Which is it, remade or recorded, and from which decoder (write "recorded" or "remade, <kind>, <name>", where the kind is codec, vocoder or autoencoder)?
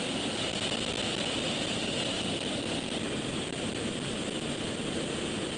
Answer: recorded